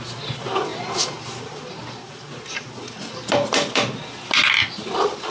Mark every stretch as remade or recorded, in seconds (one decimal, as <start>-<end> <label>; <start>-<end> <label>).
0.0-0.7 recorded; 0.7-3.9 remade; 3.9-5.3 recorded